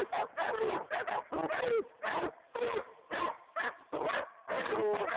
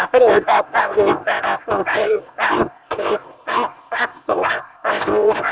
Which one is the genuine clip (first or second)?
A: first